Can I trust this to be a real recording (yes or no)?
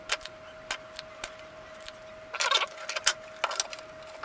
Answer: yes